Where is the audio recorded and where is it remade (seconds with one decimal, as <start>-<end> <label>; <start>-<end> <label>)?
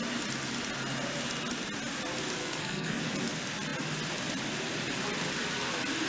0.0-2.4 recorded; 2.4-3.0 remade; 3.0-6.1 recorded